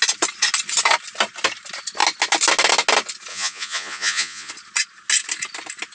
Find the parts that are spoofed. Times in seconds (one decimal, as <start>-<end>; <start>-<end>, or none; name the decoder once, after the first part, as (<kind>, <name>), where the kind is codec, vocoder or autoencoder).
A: 3.3-4.5 (vocoder, Vocos)